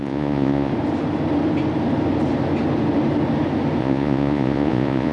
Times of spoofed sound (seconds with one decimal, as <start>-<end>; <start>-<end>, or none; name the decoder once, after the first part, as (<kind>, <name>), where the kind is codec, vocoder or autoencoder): 0.0-0.7 (vocoder, Vocos); 3.8-5.1